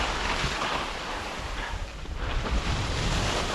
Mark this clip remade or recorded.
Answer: recorded